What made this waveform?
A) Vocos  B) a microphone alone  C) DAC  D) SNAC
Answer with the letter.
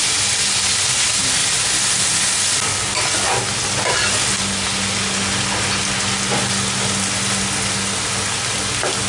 B